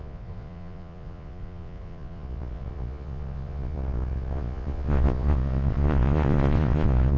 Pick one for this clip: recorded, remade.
remade